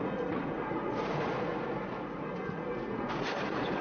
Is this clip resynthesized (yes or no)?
yes